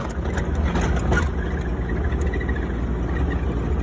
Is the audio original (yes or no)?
yes